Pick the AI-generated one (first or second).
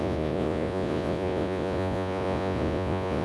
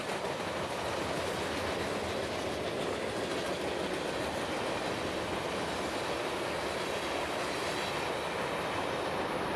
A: first